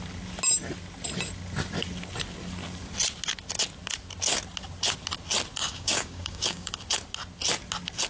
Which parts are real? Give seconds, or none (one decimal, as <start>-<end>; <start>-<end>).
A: 0.0-5.6; 6.7-8.1